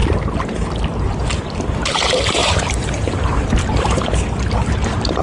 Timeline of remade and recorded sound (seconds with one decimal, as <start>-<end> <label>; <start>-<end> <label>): 0.0-1.4 recorded; 1.4-5.2 remade